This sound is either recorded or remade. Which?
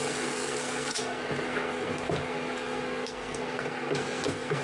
remade